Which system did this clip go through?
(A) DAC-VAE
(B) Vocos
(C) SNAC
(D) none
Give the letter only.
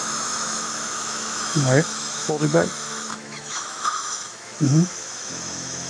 A